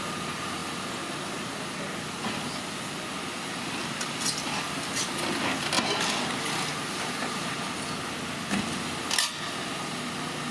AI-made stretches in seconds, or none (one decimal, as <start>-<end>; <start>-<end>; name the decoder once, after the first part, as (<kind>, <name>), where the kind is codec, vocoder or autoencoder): 0.6-1.7 (vocoder, BigVGAN v2); 3.8-4.5